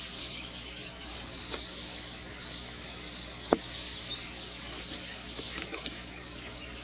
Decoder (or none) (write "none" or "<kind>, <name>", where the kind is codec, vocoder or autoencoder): codec, DAC